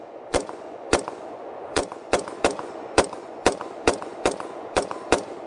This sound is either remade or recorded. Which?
remade